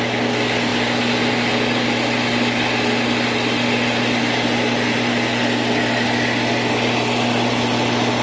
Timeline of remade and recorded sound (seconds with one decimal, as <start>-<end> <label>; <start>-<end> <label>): 0.0-8.2 recorded